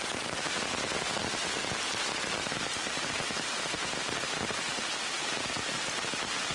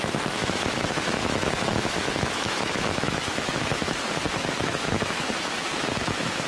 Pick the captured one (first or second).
first